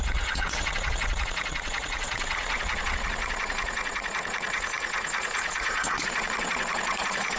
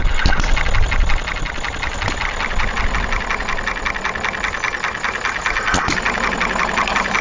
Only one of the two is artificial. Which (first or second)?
first